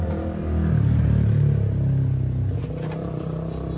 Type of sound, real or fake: real